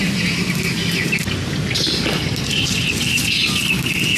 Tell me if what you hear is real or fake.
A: real